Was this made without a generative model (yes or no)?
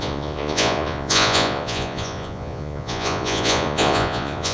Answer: no